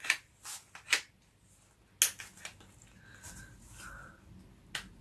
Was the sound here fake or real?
real